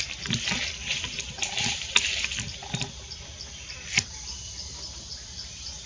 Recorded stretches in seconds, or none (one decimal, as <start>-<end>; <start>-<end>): 0.0-5.9